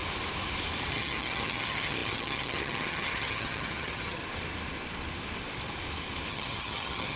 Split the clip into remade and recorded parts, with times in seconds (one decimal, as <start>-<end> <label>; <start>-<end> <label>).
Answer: 0.0-0.9 recorded; 0.9-4.2 remade; 4.2-6.3 recorded; 6.3-7.2 remade